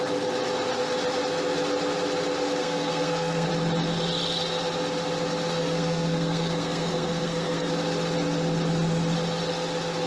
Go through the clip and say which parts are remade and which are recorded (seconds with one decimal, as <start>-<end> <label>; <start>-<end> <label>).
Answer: 0.0-2.6 recorded; 2.6-3.5 remade; 3.5-5.6 recorded; 5.6-7.7 remade; 7.7-10.1 recorded